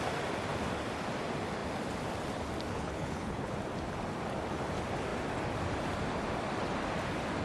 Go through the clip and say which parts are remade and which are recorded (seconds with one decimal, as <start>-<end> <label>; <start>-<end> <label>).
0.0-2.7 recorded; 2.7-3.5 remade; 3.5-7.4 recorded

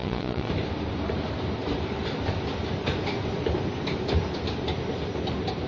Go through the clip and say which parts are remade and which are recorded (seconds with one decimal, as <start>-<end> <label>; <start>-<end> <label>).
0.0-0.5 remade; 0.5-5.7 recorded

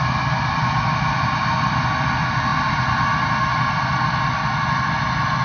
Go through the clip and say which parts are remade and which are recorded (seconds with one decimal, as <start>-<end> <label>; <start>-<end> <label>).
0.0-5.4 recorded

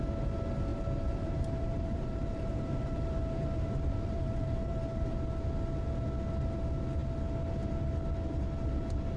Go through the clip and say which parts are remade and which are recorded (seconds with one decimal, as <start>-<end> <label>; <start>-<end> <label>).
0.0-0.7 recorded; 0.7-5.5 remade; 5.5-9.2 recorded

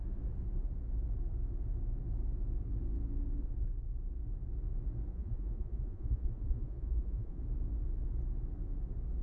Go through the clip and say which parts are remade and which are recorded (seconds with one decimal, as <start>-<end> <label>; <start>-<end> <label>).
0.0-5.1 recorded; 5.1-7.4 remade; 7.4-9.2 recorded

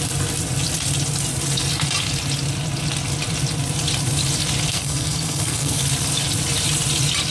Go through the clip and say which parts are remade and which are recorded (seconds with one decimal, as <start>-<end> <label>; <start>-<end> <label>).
0.0-4.7 recorded; 4.7-5.8 remade; 5.8-7.3 recorded

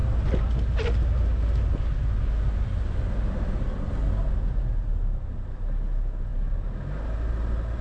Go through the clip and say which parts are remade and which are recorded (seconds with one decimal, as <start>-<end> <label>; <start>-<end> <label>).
0.0-7.8 recorded